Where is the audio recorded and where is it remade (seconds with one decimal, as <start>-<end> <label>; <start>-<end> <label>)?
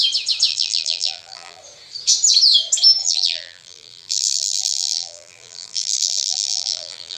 0.0-0.5 recorded; 0.5-1.6 remade; 1.6-3.0 recorded; 3.0-7.2 remade